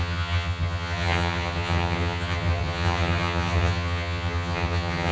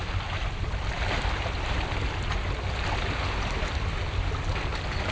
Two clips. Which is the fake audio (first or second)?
first